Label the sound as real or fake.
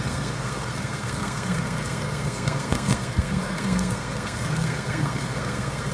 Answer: fake